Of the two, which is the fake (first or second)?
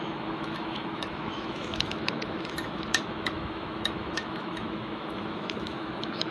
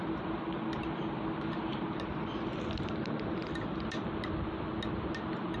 first